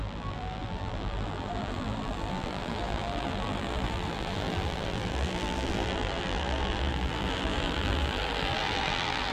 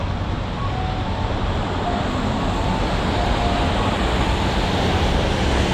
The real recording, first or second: second